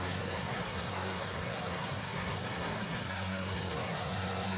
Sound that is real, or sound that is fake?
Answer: fake